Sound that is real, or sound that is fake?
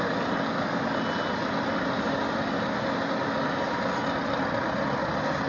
real